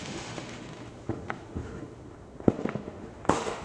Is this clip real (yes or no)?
no